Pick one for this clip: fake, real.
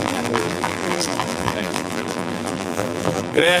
fake